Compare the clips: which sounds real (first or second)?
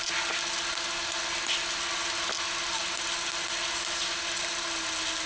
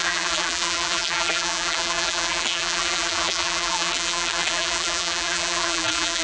first